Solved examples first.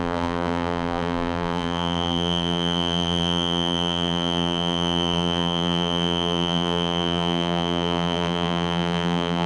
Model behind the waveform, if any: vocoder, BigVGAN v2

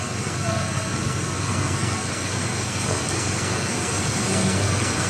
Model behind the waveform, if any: codec, SNAC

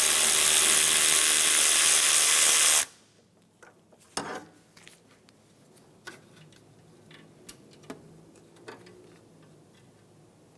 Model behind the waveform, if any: none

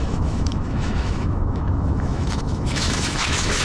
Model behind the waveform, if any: autoencoder, DAC-VAE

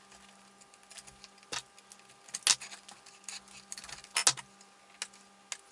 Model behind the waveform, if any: none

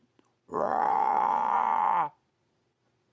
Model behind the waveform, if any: vocoder, Vocos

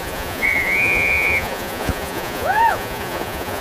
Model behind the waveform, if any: vocoder, Vocos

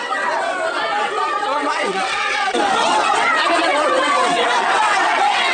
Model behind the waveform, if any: vocoder, WaveNeXt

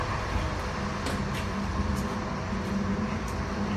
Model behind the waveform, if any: none